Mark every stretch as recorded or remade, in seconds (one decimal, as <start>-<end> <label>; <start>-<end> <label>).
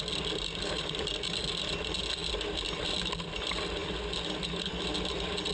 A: 0.0-5.5 recorded